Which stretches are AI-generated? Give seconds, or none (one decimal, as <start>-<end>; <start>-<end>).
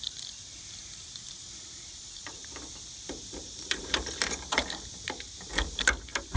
2.4-4.6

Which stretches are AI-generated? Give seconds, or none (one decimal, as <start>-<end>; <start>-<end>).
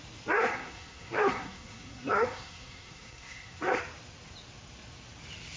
0.4-3.8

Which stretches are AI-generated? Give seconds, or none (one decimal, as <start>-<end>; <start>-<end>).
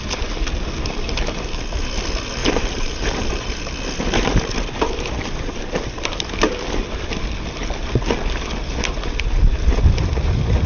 2.4-3.7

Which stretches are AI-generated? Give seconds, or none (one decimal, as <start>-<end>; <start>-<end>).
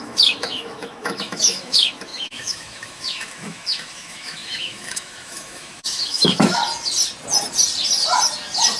0.0-6.6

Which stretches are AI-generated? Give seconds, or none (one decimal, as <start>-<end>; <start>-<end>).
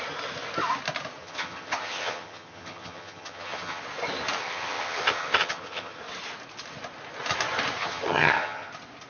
1.2-3.8; 4.4-6.0; 7.8-8.7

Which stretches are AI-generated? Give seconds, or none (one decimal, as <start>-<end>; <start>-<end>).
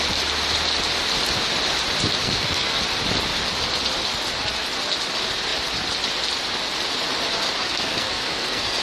2.2-2.8; 7.6-8.8